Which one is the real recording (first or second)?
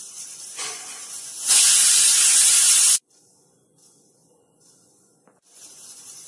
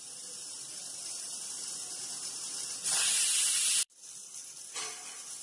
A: second